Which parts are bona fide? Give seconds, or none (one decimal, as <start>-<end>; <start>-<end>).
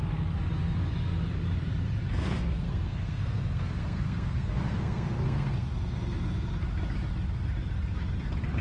0.0-2.1; 5.7-8.6